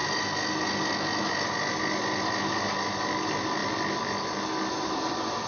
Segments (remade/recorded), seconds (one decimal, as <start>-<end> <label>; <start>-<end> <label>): 0.0-5.5 recorded